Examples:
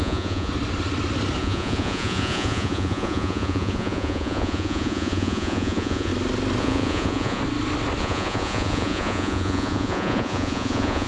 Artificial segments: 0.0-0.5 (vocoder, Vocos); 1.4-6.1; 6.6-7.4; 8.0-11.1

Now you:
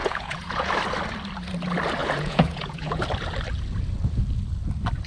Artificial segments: 0.0-0.7 (vocoder, Vocos); 2.0-3.0

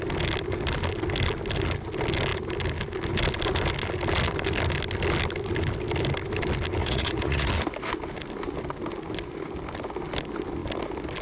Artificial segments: 6.8-7.5 (vocoder, Vocos)

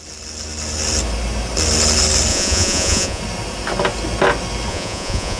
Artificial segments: 2.3-3.2 (vocoder, Vocos); 4.7-5.4

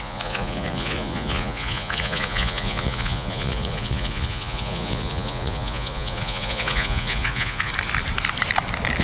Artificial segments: 0.0-7.7 (vocoder, Vocos)